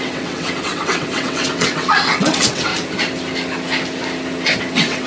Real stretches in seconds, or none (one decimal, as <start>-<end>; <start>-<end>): 2.7-4.6